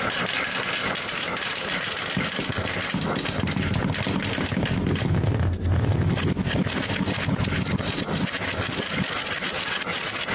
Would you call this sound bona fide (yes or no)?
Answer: yes